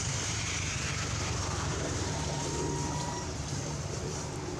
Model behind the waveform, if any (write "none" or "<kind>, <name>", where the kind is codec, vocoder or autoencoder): vocoder, BigVGAN v2